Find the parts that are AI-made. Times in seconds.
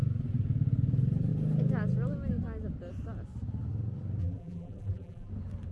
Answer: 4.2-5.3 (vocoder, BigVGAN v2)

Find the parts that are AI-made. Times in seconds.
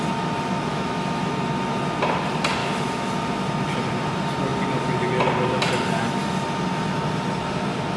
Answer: 0.7-1.3 (autoencoder, DAC-VAE); 2.6-3.1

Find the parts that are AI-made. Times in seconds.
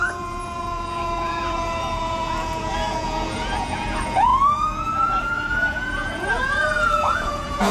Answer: 0.0-7.7 (vocoder, Vocos)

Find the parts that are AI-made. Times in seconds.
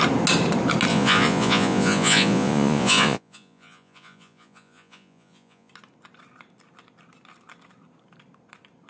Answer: 0.9-5.7 (vocoder, Vocos)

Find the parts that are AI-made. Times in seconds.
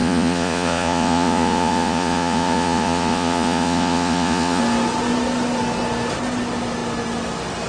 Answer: 0.0-4.6 (vocoder, Vocos)